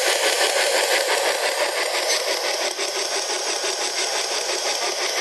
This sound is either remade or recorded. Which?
recorded